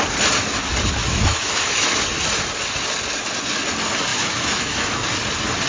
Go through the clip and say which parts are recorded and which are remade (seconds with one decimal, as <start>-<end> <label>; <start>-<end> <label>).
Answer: 0.0-1.0 recorded; 1.0-2.0 remade; 2.0-4.1 recorded; 4.1-5.1 remade; 5.1-5.7 recorded